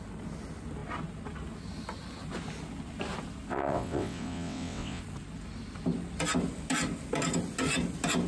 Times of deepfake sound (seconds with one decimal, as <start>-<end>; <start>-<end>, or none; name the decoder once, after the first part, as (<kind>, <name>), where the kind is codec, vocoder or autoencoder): 3.5-5.0 (vocoder, WaveNeXt)